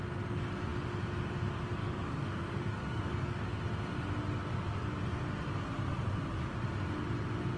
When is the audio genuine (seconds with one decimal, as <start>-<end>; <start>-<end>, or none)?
0.0-1.8; 3.5-4.5; 5.0-7.6